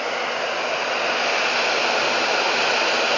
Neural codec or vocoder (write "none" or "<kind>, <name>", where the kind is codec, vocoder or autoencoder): none